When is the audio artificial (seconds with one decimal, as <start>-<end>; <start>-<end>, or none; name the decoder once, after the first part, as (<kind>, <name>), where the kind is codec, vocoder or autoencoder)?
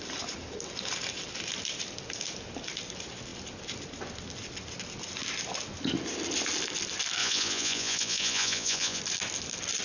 7.2-9.0 (vocoder, Vocos)